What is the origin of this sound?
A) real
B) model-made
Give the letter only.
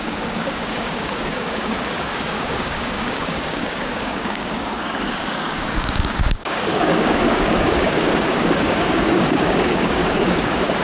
B